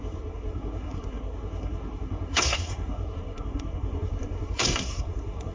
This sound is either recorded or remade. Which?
remade